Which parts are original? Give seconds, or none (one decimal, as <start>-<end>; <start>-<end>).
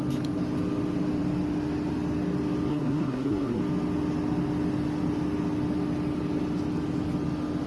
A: 0.0-2.7; 3.6-7.7